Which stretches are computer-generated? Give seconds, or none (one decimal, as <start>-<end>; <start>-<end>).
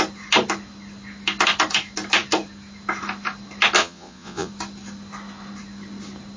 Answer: 3.8-4.5